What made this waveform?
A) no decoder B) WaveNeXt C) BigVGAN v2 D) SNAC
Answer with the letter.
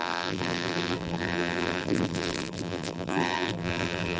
C